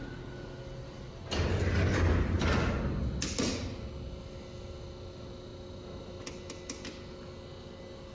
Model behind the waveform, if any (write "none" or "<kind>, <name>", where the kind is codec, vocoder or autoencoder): none